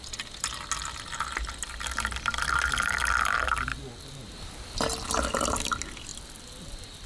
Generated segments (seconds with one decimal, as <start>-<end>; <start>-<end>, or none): none